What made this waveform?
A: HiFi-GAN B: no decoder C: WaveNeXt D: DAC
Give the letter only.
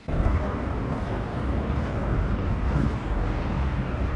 D